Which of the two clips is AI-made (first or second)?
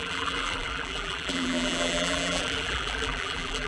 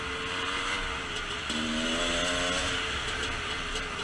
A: first